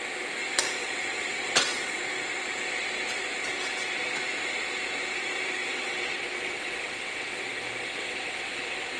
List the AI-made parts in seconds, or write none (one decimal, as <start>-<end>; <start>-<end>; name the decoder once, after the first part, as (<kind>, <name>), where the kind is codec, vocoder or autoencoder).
0.8-2.0 (vocoder, WaveNeXt); 5.6-7.4; 8.0-9.0